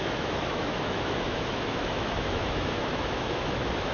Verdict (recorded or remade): remade